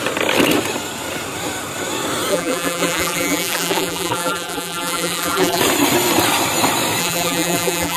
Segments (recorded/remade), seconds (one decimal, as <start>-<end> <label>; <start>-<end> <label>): 0.0-2.3 recorded; 2.3-5.6 remade; 5.6-7.0 recorded; 7.0-8.0 remade